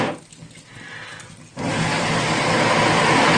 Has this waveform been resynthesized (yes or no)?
no